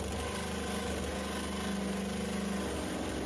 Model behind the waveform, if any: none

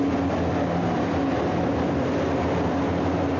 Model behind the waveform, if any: none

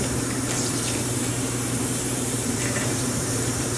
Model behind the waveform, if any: vocoder, BigVGAN v2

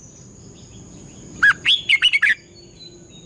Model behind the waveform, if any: none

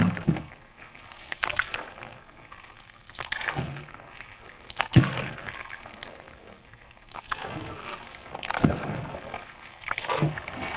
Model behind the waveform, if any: codec, SNAC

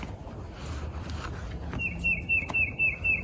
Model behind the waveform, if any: none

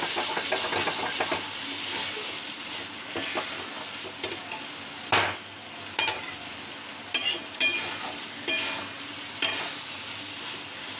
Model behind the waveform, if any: none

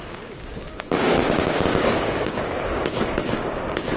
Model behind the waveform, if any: codec, DAC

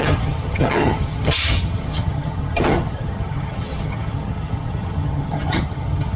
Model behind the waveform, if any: vocoder, HiFi-GAN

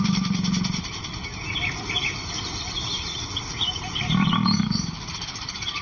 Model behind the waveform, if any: vocoder, BigVGAN v2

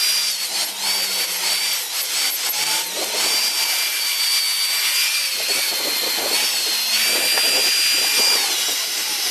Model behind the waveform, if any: none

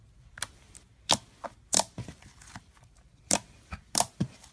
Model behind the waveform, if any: vocoder, BigVGAN v2